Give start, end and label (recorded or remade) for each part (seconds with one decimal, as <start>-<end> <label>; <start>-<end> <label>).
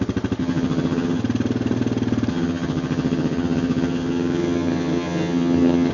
0.0-0.4 recorded; 0.4-1.2 remade; 1.2-2.3 recorded; 2.3-5.9 remade